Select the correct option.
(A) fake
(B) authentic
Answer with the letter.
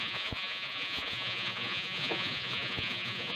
A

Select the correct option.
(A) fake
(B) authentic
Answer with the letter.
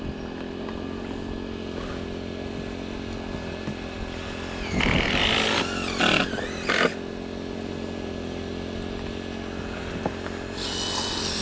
B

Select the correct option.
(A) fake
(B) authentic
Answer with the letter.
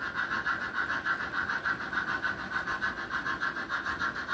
B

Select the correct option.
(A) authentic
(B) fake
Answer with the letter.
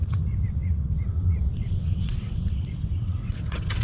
B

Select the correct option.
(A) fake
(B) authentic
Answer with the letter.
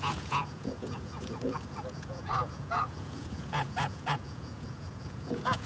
A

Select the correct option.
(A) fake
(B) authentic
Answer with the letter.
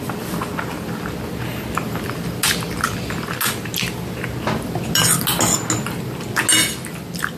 B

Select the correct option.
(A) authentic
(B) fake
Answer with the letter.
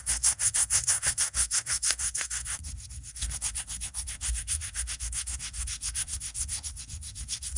B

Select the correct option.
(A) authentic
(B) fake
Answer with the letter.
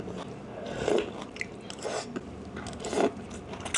A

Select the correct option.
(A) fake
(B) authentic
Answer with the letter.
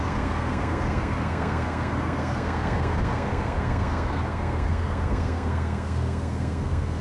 A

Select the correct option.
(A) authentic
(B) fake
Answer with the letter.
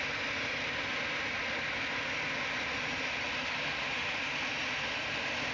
A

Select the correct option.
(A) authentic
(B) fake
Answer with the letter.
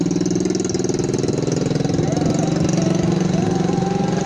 A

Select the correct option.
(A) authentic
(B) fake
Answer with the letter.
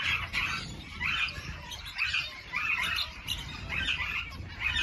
B